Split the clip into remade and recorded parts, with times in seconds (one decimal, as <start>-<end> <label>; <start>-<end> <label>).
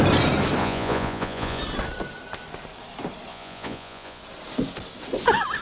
0.0-0.6 recorded; 0.6-1.6 remade; 1.6-3.3 recorded; 3.3-4.2 remade; 4.2-5.6 recorded